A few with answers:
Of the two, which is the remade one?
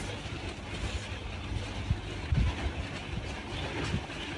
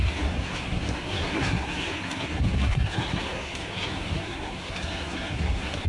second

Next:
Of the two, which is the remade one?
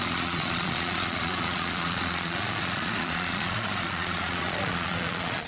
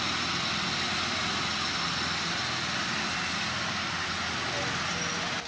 first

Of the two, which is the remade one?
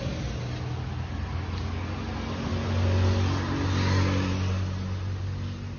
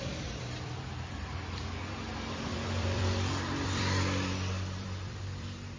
second